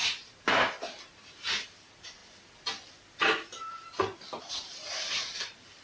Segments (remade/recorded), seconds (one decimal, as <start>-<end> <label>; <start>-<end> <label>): 0.0-2.2 remade; 2.2-4.4 recorded; 4.4-5.8 remade